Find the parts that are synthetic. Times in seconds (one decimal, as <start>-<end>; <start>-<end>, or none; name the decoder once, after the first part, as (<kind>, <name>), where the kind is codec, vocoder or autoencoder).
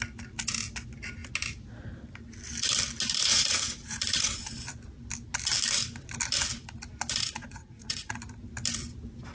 3.3-4.4 (vocoder, Vocos); 7.2-8.2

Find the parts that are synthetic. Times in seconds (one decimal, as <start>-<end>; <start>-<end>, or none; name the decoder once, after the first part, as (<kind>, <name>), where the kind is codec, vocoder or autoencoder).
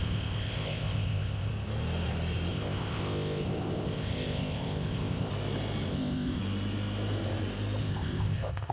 0.0-1.5 (codec, ZipCodec); 2.5-5.3; 5.9-6.4; 7.8-8.7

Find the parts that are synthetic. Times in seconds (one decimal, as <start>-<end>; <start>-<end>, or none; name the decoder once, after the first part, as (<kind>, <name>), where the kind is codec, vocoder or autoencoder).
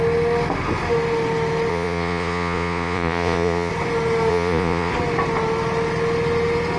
1.7-3.7 (vocoder, Vocos); 4.3-4.9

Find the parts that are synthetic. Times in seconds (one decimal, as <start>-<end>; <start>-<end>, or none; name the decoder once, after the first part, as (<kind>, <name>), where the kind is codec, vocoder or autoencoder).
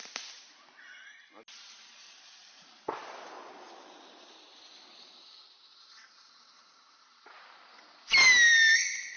none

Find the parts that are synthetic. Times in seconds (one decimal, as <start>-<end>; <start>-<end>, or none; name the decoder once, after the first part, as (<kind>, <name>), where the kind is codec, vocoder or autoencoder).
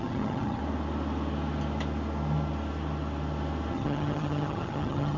0.0-0.6 (vocoder, HiFi-GAN); 3.7-5.2